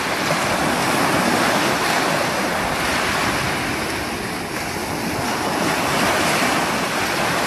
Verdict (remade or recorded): recorded